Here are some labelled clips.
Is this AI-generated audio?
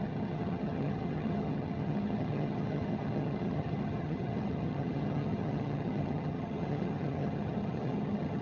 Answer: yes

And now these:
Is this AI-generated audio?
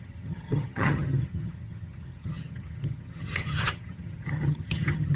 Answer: yes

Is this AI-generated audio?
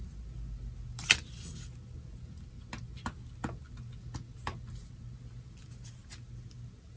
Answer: no